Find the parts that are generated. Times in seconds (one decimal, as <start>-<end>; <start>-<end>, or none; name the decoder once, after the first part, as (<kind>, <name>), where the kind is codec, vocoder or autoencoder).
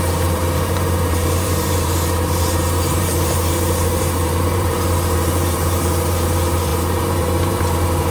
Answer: 0.0-8.1 (vocoder, BigVGAN v2)